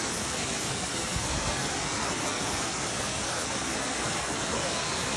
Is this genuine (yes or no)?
no